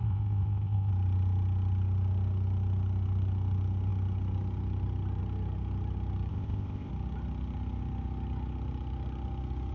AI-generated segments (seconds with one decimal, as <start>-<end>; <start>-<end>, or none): 0.0-0.9; 6.3-6.9